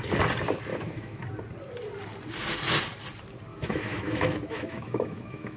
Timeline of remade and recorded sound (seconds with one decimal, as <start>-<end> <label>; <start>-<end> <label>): 0.0-0.7 recorded; 0.7-1.2 remade; 1.2-3.5 recorded; 3.5-5.6 remade